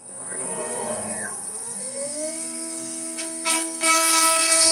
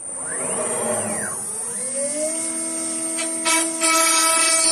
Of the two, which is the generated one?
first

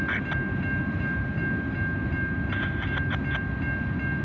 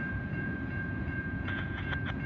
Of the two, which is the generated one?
second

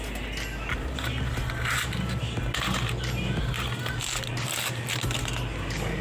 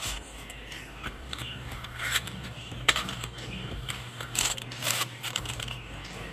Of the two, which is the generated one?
second